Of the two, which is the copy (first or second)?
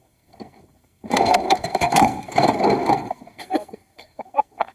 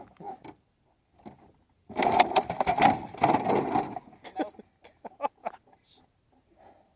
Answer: first